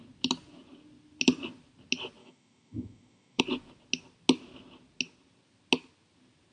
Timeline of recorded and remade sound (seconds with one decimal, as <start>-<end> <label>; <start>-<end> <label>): 0.0-2.2 recorded; 2.2-3.4 remade; 3.4-6.5 recorded